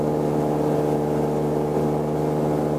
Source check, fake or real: real